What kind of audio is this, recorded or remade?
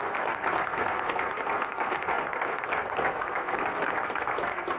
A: remade